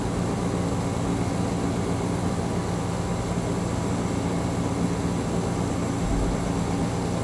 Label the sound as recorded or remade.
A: recorded